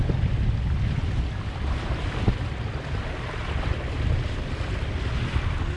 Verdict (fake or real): real